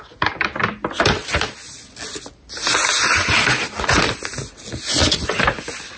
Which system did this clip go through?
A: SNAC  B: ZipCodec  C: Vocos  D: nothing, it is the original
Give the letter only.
D